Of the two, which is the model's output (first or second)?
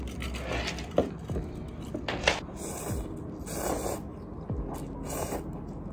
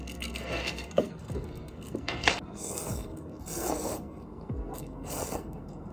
second